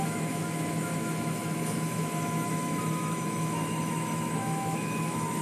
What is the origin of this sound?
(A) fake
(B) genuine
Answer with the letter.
A